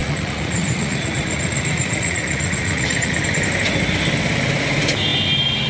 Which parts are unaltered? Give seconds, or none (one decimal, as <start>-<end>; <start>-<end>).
3.2-5.7